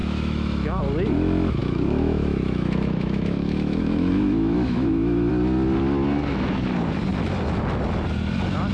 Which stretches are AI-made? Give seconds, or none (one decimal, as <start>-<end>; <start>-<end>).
0.0-0.8; 1.6-5.3